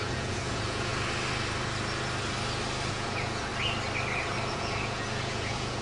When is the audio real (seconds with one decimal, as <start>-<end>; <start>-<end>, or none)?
0.9-2.9; 3.5-4.5